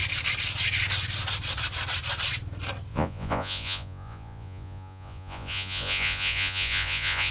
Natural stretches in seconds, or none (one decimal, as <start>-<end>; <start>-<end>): 0.0-2.9